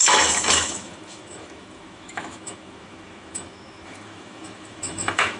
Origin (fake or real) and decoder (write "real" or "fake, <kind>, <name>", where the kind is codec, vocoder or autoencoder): fake, autoencoder, DAC-VAE